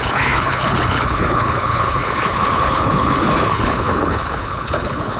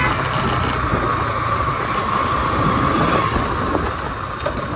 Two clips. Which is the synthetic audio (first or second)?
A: first